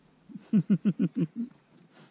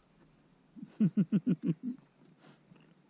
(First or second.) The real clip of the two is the second